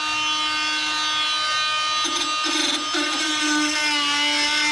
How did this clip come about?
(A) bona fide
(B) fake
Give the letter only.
A